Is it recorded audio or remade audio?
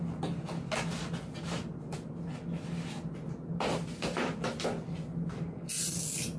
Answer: recorded